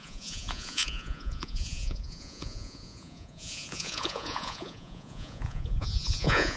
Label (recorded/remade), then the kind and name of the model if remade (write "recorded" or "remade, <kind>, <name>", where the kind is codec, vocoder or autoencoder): remade, vocoder, Vocos